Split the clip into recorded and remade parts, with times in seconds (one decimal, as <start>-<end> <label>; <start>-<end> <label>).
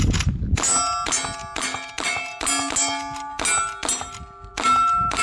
0.0-5.2 recorded